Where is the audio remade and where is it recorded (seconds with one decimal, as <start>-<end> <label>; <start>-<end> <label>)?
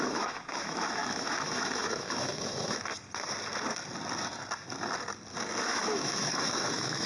0.0-2.9 remade; 2.9-5.6 recorded; 5.6-7.1 remade